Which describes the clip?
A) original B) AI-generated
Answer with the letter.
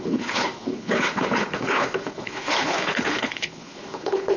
B